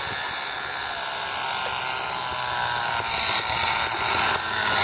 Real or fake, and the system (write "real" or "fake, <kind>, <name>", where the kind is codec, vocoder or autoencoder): real